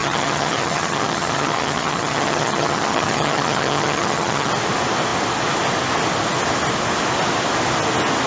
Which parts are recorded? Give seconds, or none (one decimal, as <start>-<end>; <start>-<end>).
4.5-8.3